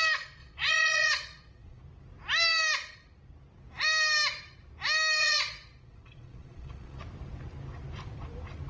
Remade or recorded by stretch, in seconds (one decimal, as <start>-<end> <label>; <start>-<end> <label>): 0.0-0.4 recorded; 0.4-1.8 remade; 1.8-5.2 recorded; 5.2-7.0 remade; 7.0-8.7 recorded